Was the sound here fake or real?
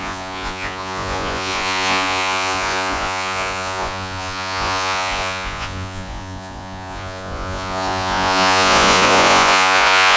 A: fake